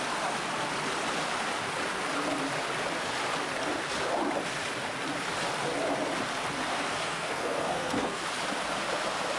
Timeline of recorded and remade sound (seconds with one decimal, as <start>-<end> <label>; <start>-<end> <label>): 0.0-6.7 recorded; 6.7-8.2 remade; 8.2-9.4 recorded